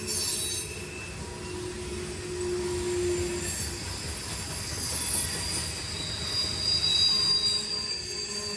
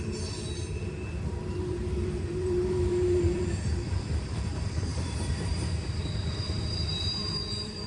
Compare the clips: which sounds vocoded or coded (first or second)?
second